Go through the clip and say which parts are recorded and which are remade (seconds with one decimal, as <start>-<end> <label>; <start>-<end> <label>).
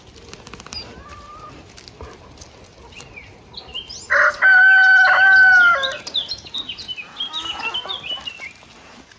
0.0-9.2 recorded